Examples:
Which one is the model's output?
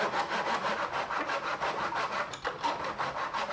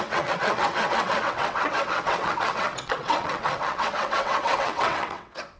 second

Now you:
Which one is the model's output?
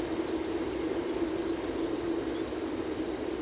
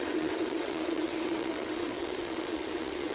second